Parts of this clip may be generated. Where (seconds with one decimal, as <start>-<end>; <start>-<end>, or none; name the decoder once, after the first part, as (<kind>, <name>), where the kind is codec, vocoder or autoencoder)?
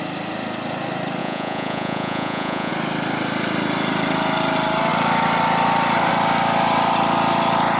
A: 1.2-2.7 (vocoder, Vocos)